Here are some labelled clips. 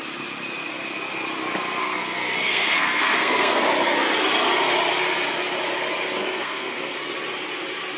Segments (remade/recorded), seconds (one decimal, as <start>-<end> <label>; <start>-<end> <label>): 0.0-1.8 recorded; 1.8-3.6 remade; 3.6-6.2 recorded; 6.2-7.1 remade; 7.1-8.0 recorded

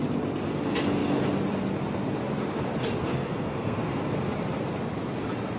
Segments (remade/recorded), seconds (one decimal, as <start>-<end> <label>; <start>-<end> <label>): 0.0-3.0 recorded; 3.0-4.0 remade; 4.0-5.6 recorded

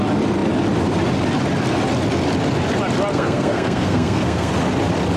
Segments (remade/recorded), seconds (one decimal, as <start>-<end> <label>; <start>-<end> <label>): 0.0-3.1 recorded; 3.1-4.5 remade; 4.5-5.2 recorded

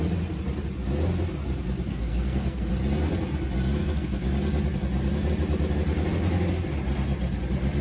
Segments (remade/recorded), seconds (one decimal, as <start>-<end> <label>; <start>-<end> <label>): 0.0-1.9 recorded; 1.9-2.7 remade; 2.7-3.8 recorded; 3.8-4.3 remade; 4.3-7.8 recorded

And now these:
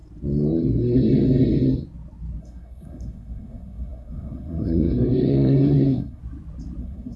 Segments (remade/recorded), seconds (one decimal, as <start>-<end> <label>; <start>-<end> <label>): 0.0-2.4 recorded; 2.4-6.2 remade; 6.2-6.8 recorded; 6.8-7.2 remade

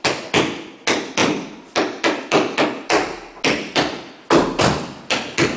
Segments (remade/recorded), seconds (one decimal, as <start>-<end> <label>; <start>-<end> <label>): 0.0-5.6 recorded